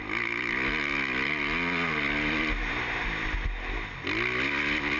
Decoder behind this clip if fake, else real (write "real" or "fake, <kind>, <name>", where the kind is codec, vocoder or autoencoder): real